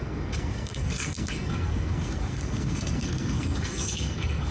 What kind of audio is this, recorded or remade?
remade